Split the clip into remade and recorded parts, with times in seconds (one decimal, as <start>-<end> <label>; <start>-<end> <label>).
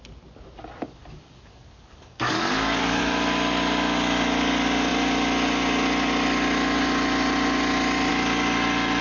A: 0.0-0.8 recorded; 0.8-3.0 remade; 3.0-9.0 recorded